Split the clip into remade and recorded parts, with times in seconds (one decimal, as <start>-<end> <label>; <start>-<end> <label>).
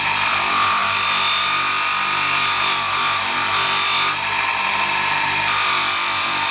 0.0-6.5 recorded